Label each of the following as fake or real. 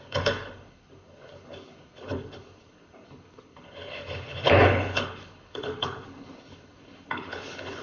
fake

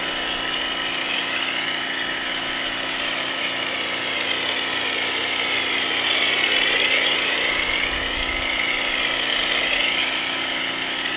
real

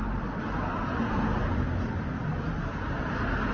real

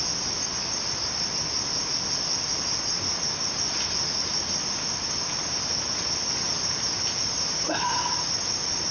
real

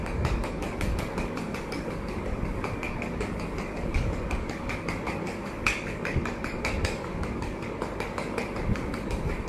fake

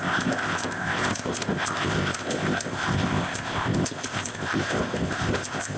fake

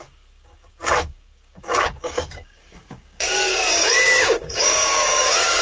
fake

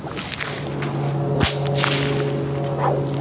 real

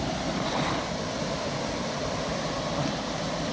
real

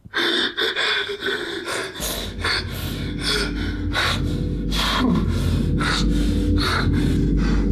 real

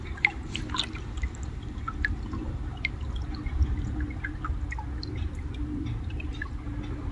real